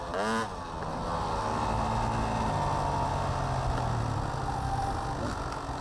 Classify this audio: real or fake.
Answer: real